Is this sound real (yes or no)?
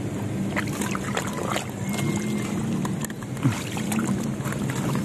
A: yes